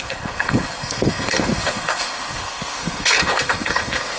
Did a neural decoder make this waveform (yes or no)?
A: yes